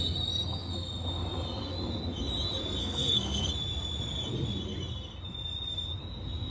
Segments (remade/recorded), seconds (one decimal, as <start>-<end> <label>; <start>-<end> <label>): 0.0-2.8 recorded; 2.8-3.5 remade; 3.5-6.5 recorded